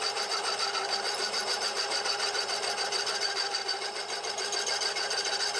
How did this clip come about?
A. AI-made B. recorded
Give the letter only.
B